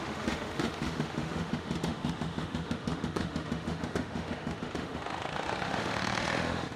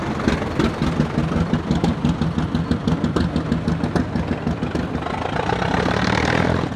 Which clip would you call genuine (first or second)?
second